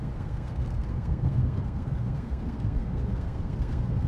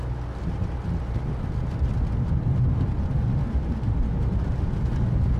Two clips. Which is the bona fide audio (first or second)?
second